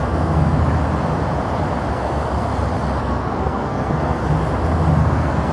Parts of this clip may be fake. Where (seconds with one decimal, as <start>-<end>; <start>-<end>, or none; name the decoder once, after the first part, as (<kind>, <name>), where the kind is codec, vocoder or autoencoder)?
0.0-0.6 (codec, SNAC); 1.9-2.5; 3.0-4.2; 5.0-5.5